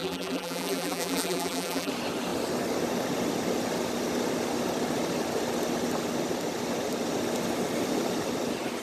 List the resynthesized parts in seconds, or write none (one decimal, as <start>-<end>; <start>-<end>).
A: 0.0-1.9